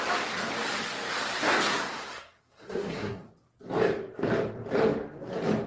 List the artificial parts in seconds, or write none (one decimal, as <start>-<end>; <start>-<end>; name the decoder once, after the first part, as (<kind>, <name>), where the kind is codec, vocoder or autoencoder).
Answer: 1.7-3.3 (codec, SNAC)